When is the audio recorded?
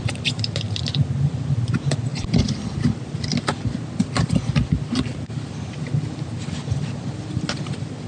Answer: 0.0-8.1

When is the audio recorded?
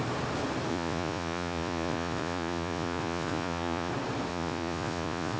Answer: 0.0-0.7; 3.9-4.3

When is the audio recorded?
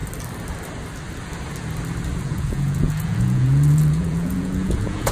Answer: 0.0-2.2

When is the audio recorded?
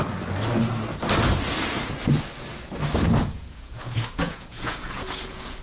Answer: 0.0-3.2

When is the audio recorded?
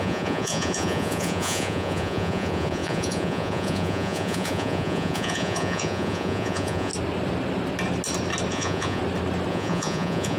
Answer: 6.9-8.5; 9.0-9.5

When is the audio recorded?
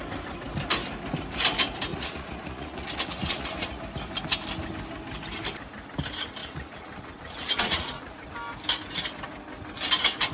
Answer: 0.0-1.9; 3.8-6.4; 8.3-10.3